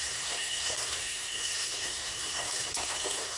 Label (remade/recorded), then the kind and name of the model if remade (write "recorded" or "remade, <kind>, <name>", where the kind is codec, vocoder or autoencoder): remade, codec, SNAC